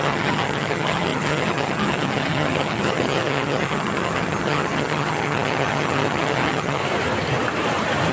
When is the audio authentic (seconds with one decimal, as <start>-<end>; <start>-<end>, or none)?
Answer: 6.8-8.1